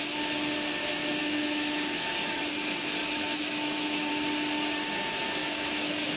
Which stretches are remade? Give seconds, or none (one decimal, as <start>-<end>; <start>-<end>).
1.2-2.4; 3.0-4.1; 5.4-6.2

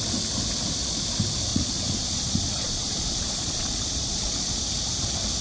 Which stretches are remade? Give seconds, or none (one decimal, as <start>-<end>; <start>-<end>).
1.5-4.6

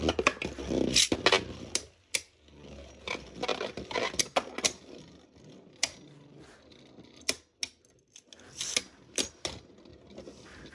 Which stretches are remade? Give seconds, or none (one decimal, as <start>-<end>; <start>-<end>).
none

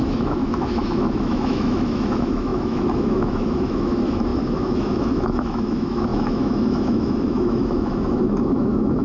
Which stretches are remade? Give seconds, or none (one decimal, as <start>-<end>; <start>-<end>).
0.0-9.0